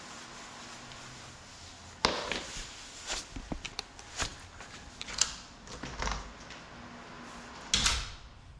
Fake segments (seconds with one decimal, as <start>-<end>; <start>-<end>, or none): none